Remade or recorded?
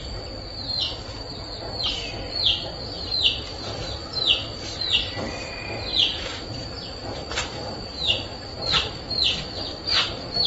recorded